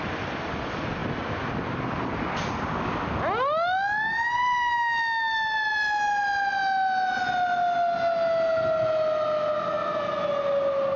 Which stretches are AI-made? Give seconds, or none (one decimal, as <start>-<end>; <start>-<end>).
none

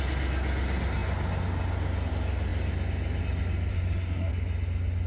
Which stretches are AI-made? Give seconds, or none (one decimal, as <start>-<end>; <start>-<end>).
3.7-4.3

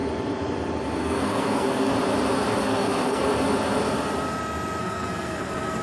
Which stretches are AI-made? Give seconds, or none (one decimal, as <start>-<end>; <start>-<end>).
1.0-1.9; 2.6-3.2; 4.8-5.8